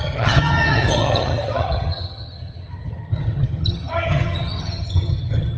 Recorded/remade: remade